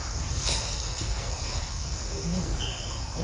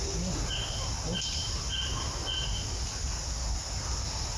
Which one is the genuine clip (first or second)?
second